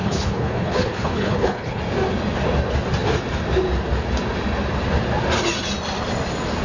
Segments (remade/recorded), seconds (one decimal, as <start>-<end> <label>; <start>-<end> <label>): 0.0-1.8 remade; 1.8-6.6 recorded